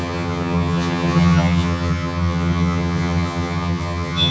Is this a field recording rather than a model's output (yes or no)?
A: no